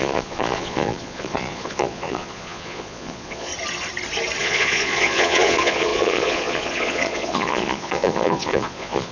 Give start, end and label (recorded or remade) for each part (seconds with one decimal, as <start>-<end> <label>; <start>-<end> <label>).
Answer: 0.0-3.5 remade; 3.5-4.4 recorded; 4.4-9.1 remade